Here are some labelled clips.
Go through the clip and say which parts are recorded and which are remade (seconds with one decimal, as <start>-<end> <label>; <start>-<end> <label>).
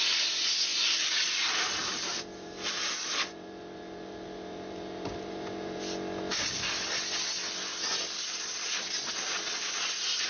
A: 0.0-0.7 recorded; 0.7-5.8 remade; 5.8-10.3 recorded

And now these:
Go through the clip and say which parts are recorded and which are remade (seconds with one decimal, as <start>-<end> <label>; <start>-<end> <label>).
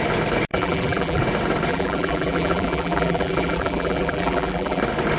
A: 0.0-0.5 recorded; 0.5-1.2 remade; 1.2-1.7 recorded; 1.7-4.8 remade; 4.8-5.2 recorded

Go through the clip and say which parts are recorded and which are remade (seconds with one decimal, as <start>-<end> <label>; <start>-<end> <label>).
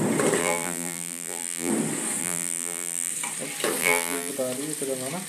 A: 0.0-0.4 recorded; 0.4-1.7 remade; 1.7-2.2 recorded; 2.2-3.1 remade; 3.1-3.8 recorded; 3.8-4.3 remade; 4.3-5.3 recorded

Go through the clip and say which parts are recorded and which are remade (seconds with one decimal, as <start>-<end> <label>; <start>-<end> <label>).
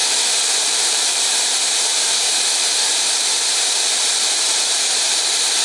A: 0.0-0.6 recorded; 0.6-5.6 remade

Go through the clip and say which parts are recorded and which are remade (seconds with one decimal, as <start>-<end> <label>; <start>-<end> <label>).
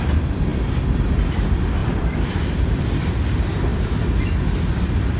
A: 0.0-0.5 recorded; 0.5-1.3 remade; 1.3-1.8 recorded; 1.8-3.2 remade; 3.2-5.2 recorded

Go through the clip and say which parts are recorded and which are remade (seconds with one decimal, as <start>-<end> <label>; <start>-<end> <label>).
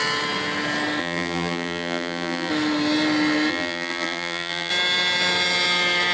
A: 0.0-1.0 recorded; 1.0-2.5 remade; 2.5-3.5 recorded; 3.5-4.7 remade; 4.7-6.1 recorded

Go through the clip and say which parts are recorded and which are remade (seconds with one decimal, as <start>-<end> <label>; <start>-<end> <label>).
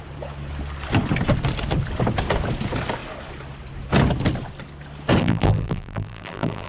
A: 0.0-5.2 recorded; 5.2-6.7 remade